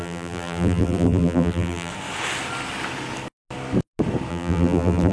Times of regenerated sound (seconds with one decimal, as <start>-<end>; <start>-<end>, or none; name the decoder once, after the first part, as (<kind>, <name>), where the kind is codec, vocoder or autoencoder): 0.0-1.9 (vocoder, BigVGAN v2); 4.3-5.1